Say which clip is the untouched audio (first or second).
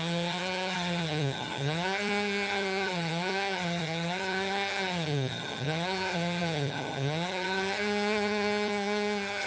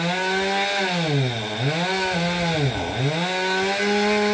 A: second